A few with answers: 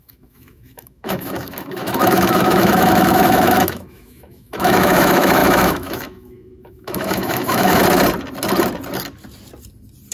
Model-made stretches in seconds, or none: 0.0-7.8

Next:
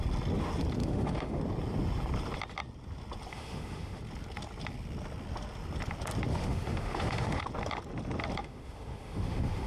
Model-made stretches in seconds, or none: 0.8-1.4; 3.3-4.0; 6.3-7.4; 8.4-9.7

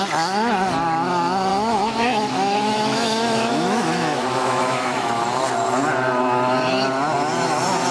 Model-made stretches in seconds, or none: 1.5-5.2

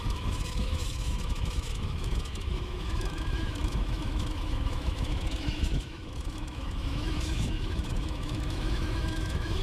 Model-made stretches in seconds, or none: 0.0-9.6

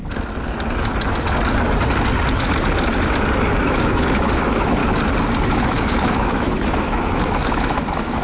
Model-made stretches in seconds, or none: 3.6-4.8; 5.4-8.2

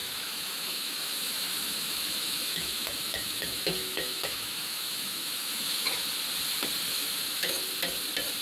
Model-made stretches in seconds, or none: 0.0-6.0; 6.9-7.6